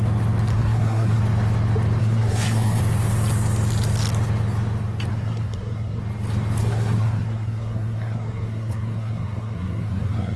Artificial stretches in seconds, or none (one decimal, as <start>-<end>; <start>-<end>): 0.5-1.2; 2.0-2.8; 5.1-6.0; 6.6-10.4